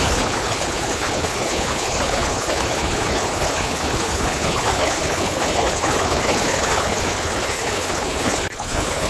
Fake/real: fake